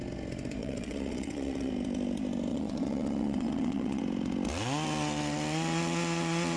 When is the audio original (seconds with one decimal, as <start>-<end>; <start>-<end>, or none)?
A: 0.0-0.6; 1.7-2.5; 4.0-6.6